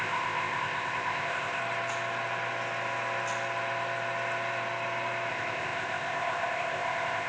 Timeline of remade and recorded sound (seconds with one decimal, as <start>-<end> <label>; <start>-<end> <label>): 0.0-1.6 remade; 1.6-5.3 recorded; 5.3-7.3 remade